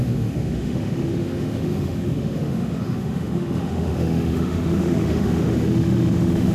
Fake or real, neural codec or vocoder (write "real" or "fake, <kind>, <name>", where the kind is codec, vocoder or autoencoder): fake, autoencoder, DAC-VAE